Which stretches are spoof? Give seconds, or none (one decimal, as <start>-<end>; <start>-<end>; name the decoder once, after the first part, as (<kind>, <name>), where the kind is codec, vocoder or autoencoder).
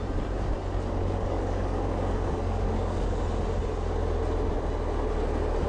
1.0-3.2 (codec, DAC)